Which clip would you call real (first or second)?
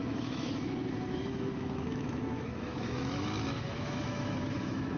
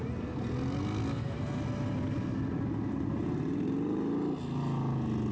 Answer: second